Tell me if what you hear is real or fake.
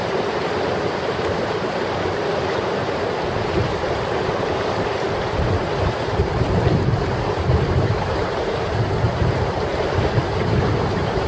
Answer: fake